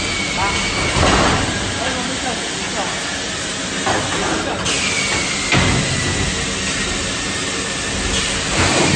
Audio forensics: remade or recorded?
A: recorded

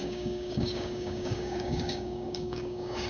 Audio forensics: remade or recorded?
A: remade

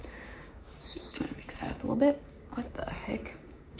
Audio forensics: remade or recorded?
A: remade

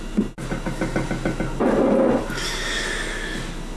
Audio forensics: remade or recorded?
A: recorded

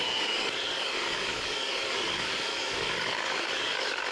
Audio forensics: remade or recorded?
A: remade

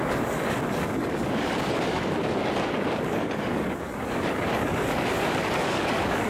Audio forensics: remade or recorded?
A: remade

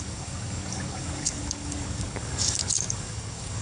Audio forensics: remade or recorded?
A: remade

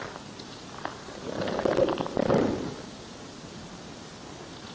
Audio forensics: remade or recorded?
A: recorded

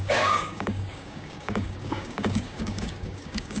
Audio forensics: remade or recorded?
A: remade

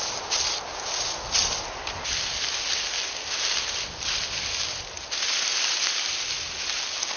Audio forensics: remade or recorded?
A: recorded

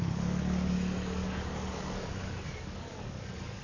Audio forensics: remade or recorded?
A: remade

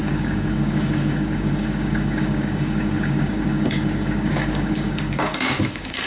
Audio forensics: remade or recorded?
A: remade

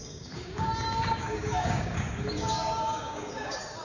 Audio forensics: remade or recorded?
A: remade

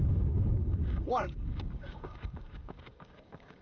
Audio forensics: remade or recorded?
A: remade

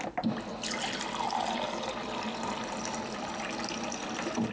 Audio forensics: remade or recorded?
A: recorded